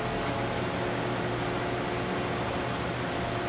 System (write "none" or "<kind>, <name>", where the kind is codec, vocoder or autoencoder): none